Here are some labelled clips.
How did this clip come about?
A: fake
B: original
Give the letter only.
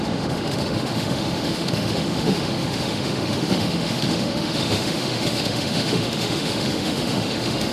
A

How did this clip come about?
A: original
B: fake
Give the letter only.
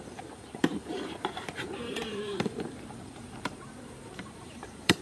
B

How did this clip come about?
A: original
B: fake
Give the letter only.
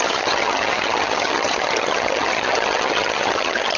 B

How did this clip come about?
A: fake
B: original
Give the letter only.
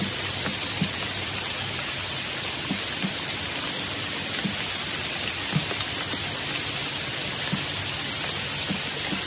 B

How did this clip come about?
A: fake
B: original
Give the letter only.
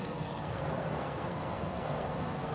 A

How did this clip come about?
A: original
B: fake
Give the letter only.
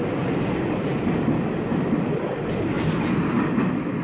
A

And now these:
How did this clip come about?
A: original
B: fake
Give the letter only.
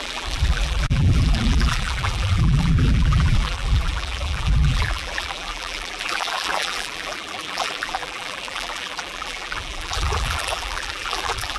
B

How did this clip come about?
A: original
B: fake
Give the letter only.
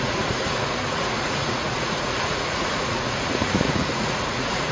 B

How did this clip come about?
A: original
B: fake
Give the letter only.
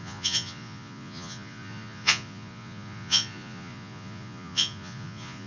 B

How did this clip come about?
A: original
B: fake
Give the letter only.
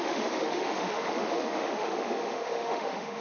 B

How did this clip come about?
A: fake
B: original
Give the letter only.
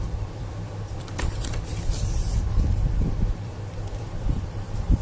A